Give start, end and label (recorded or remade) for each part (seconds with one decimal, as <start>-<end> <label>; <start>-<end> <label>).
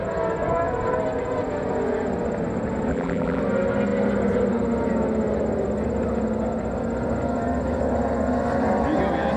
0.0-2.9 recorded; 2.9-3.4 remade; 3.4-9.4 recorded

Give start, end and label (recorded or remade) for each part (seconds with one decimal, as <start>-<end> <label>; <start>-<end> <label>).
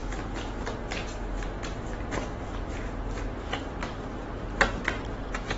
0.0-5.6 recorded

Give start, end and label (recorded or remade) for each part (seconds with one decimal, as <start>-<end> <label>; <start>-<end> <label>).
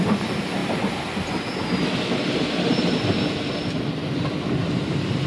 0.0-0.6 remade; 0.6-3.8 recorded; 3.8-5.3 remade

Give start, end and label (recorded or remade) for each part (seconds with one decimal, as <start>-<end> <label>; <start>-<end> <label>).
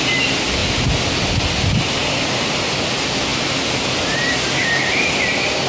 0.0-2.0 recorded; 2.0-2.7 remade; 2.7-5.7 recorded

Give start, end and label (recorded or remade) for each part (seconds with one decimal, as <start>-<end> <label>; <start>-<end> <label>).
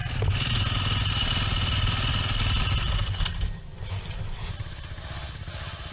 0.0-3.3 recorded; 3.3-4.3 remade; 4.3-5.9 recorded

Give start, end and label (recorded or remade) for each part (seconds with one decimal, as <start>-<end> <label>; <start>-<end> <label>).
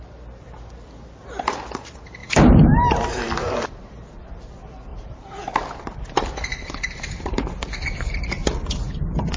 0.0-2.2 recorded; 2.2-3.0 remade; 3.0-4.9 recorded; 4.9-6.0 remade; 6.0-6.5 recorded; 6.5-8.3 remade; 8.3-9.4 recorded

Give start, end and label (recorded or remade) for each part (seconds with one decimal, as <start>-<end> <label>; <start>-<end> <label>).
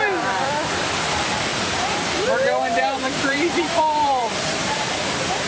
0.0-1.5 recorded; 1.5-4.8 remade; 4.8-5.5 recorded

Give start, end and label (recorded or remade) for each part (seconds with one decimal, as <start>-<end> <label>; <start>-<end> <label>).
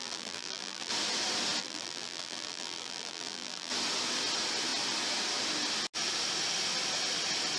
0.0-0.9 remade; 0.9-1.6 recorded; 1.6-3.7 remade; 3.7-7.6 recorded